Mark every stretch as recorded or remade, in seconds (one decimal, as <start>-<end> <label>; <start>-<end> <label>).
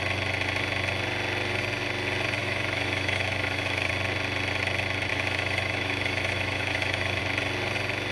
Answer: 0.0-2.4 recorded; 2.4-3.9 remade; 3.9-5.1 recorded; 5.1-7.2 remade; 7.2-8.1 recorded